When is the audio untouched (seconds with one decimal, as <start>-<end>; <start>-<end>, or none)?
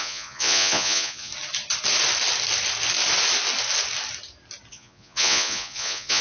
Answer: 1.3-4.7